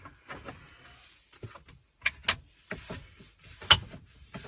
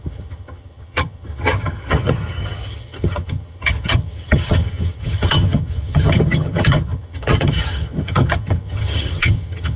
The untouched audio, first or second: first